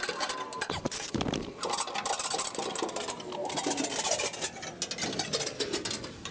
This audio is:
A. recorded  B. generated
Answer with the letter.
A